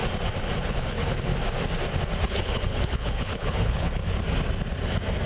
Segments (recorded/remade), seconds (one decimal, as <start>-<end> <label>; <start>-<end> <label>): 0.0-0.6 recorded; 0.6-1.3 remade; 1.3-2.2 recorded; 2.2-4.0 remade; 4.0-5.3 recorded

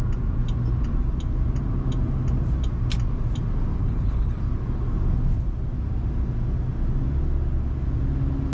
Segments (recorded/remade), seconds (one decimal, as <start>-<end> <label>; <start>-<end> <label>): 0.0-3.8 recorded; 3.8-4.4 remade; 4.4-8.5 recorded

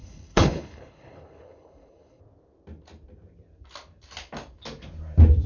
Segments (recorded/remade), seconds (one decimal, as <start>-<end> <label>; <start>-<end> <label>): 0.0-2.2 remade; 2.2-5.5 recorded

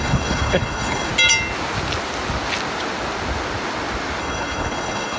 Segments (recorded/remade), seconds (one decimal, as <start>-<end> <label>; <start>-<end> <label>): 0.0-1.1 remade; 1.1-4.2 recorded; 4.2-5.2 remade